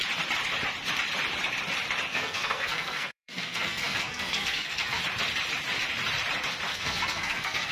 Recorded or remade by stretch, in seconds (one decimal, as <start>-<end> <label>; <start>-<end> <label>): 0.0-2.1 recorded; 2.1-5.0 remade; 5.0-6.7 recorded; 6.7-7.7 remade